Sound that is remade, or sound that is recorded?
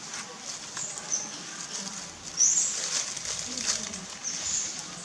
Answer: recorded